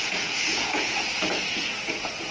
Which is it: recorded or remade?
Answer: remade